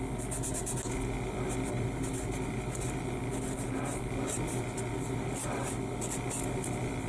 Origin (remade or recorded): recorded